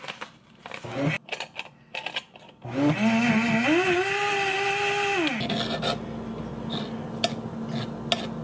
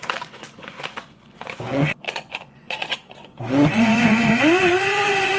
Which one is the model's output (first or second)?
second